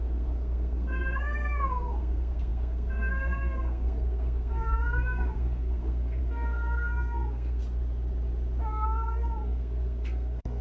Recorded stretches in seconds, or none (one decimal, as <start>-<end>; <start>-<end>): 7.6-8.6